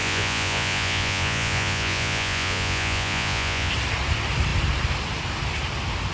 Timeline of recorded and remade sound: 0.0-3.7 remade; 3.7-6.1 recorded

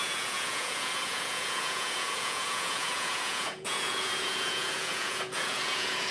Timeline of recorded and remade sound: 0.0-6.1 remade

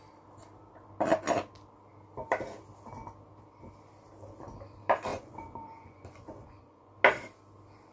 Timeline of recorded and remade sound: 0.0-5.1 recorded; 5.1-6.9 remade; 6.9-7.9 recorded

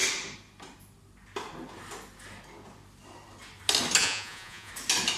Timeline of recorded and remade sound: 0.0-4.0 recorded; 4.0-4.7 remade; 4.7-5.2 recorded

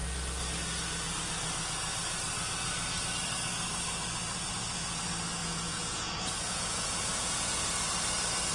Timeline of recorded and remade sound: 0.0-5.4 recorded; 5.4-7.7 remade; 7.7-8.5 recorded